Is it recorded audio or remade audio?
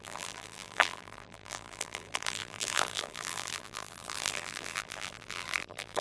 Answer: remade